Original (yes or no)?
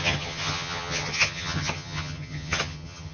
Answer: no